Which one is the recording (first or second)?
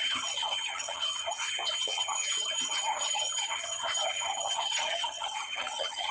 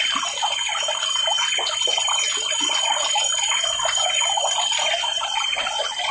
second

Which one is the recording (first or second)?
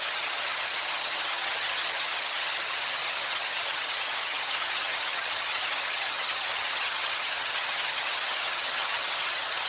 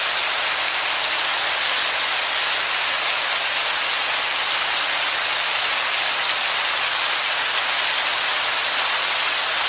second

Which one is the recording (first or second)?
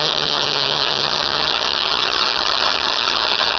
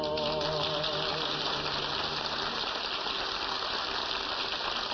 second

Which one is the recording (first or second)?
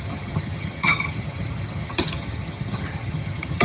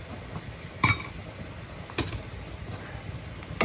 second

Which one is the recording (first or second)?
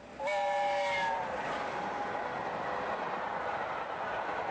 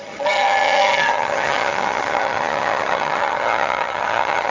first